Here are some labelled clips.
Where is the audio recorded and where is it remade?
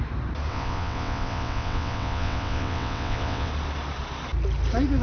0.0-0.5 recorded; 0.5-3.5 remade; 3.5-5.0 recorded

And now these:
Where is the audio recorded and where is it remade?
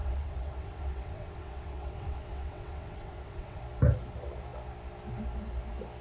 0.0-3.6 remade; 3.6-6.0 recorded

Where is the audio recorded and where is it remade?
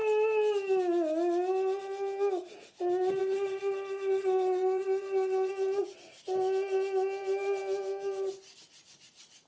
0.0-3.2 recorded; 3.2-5.5 remade; 5.5-9.5 recorded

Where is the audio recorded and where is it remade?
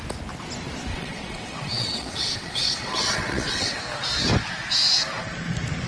0.0-0.9 recorded; 0.9-3.8 remade; 3.8-5.9 recorded